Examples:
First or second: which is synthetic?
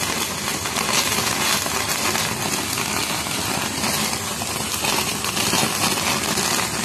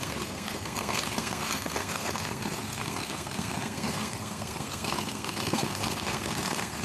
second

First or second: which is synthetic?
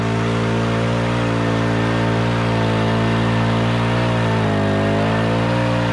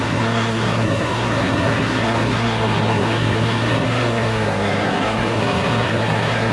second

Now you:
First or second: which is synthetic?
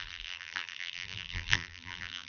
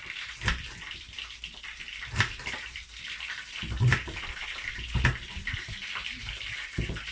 first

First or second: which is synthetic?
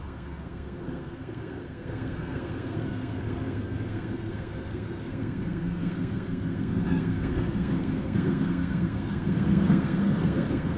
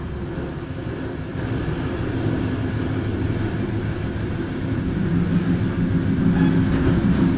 first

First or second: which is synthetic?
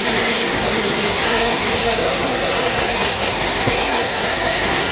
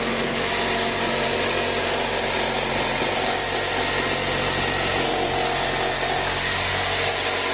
first